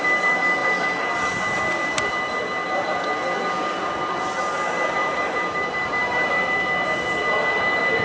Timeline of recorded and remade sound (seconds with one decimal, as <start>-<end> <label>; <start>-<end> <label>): 0.0-0.6 recorded; 0.6-2.1 remade; 2.1-5.0 recorded; 5.0-6.4 remade; 6.4-8.0 recorded